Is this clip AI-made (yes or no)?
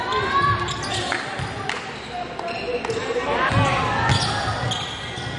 no